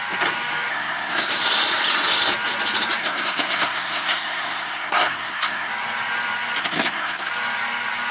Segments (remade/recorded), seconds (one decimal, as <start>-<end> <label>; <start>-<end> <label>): 0.0-0.7 recorded; 0.7-1.3 remade; 1.3-3.0 recorded; 3.0-5.7 remade; 5.7-6.6 recorded; 6.6-7.3 remade; 7.3-8.1 recorded